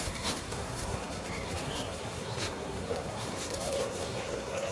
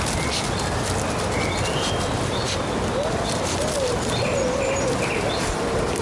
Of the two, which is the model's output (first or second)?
first